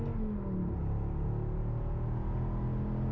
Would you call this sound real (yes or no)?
yes